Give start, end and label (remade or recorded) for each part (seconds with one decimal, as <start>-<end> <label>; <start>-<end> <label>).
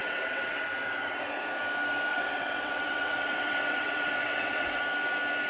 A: 0.0-0.6 remade; 0.6-2.1 recorded; 2.1-4.8 remade; 4.8-5.5 recorded